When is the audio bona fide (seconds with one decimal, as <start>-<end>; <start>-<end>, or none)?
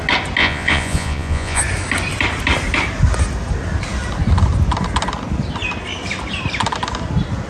0.0-0.4; 1.6-7.5